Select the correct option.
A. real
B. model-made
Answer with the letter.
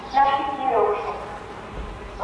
A